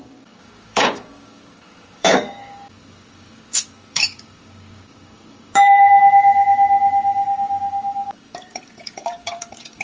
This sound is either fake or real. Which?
fake